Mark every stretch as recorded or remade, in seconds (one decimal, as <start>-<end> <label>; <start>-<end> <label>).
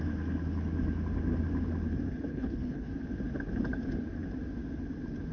0.0-2.3 recorded; 2.3-2.9 remade; 2.9-5.3 recorded